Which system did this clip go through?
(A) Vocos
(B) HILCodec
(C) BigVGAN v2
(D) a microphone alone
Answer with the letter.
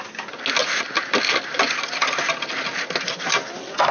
D